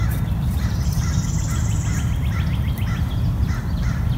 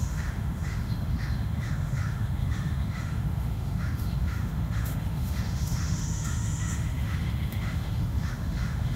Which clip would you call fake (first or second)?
second